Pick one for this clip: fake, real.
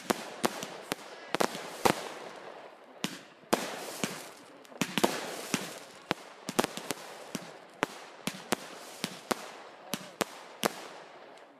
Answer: fake